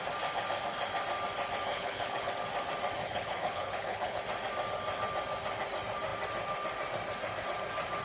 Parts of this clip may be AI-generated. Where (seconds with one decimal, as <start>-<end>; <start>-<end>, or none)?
1.7-2.3; 3.0-4.2